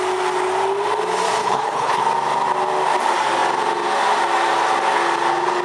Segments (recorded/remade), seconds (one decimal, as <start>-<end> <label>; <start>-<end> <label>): 0.0-1.4 recorded; 1.4-2.0 remade; 2.0-5.6 recorded